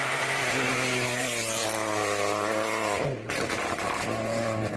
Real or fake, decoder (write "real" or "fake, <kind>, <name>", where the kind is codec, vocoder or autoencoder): fake, vocoder, BigVGAN v2